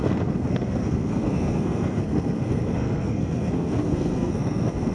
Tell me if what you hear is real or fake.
fake